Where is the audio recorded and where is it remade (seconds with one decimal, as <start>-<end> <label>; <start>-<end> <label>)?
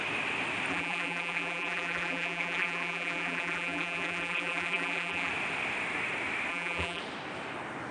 0.0-0.7 recorded; 0.7-5.3 remade; 5.3-6.5 recorded; 6.5-7.0 remade; 7.0-7.9 recorded